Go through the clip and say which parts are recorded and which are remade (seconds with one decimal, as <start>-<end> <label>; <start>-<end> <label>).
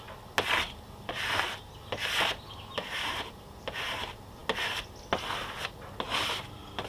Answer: 0.0-6.9 recorded